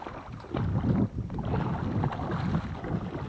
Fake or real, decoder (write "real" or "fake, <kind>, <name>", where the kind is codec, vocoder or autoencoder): real